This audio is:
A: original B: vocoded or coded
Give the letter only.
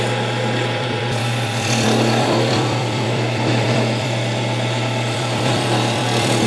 B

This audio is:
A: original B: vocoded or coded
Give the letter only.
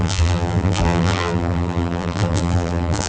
B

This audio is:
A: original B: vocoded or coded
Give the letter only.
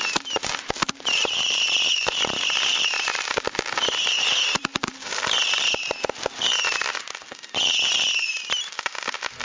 B